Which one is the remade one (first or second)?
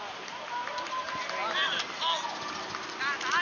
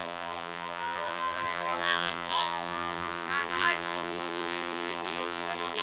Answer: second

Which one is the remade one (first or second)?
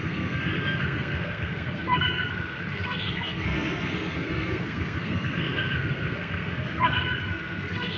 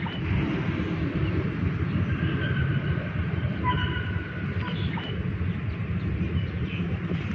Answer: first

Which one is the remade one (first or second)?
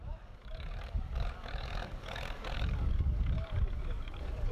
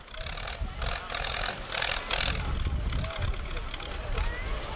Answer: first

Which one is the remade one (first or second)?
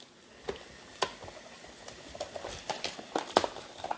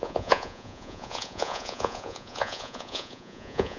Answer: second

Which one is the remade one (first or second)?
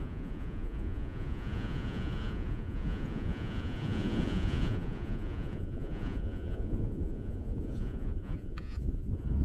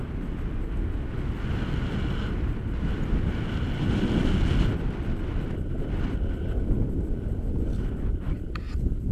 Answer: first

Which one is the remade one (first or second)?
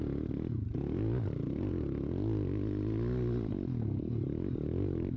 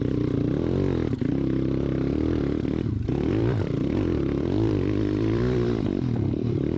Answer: second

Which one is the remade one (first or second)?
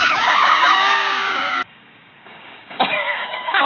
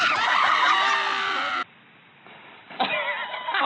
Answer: first